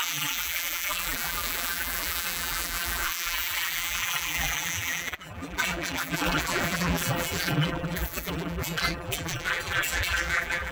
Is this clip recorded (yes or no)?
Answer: no